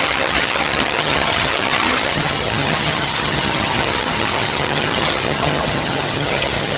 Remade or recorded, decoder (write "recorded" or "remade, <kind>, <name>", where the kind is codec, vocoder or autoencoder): remade, vocoder, HiFi-GAN